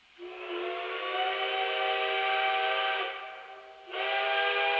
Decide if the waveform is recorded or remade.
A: recorded